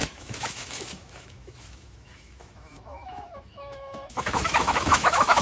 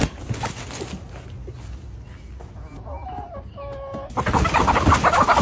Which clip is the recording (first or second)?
second